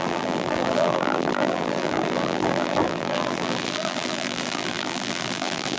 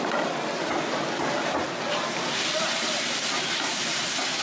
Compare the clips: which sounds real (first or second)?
second